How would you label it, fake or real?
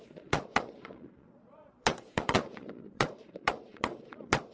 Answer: fake